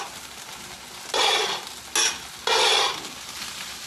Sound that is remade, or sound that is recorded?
recorded